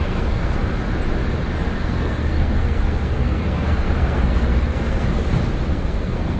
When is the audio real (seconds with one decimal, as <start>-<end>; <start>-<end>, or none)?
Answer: 0.6-1.8; 5.2-5.7

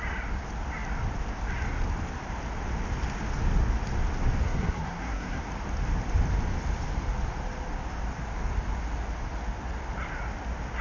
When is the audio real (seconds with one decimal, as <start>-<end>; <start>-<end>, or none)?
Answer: 0.0-4.4; 5.4-10.8

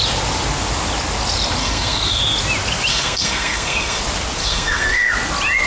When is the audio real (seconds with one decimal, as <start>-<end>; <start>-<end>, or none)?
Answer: 0.0-1.6; 2.2-2.9; 4.0-4.4; 5.1-5.7

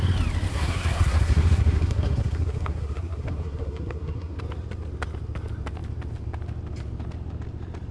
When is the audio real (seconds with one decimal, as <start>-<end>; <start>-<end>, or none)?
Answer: 0.0-0.5; 4.4-7.9

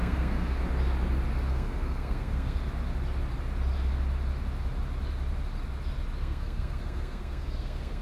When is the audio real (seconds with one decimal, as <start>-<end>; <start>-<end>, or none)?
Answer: 0.6-1.5; 2.6-6.2